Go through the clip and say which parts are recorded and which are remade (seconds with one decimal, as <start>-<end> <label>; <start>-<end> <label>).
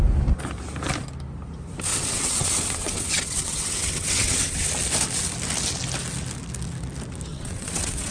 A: 0.0-1.9 recorded; 1.9-4.7 remade; 4.7-7.3 recorded; 7.3-8.1 remade